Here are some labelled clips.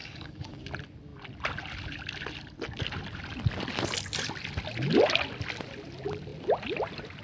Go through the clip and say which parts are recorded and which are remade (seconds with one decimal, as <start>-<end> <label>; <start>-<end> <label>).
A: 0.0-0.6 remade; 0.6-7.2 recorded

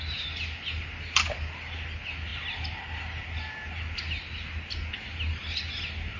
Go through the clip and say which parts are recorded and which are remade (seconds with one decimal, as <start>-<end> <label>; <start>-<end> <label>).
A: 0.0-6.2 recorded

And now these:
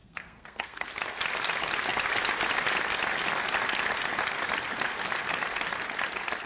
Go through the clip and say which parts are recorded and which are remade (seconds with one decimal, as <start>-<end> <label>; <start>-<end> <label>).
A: 0.0-0.9 remade; 0.9-6.5 recorded